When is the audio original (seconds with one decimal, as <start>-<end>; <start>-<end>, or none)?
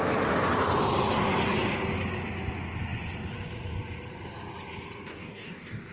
0.0-5.1